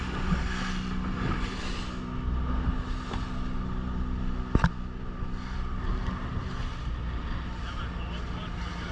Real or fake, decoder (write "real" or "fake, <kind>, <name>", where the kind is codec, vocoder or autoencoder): real